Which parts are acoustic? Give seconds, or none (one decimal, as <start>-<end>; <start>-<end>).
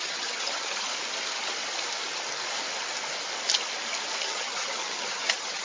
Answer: 0.9-4.2